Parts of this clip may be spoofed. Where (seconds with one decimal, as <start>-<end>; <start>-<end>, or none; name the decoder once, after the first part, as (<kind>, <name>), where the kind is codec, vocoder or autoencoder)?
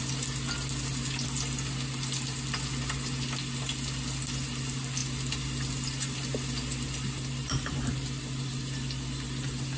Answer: none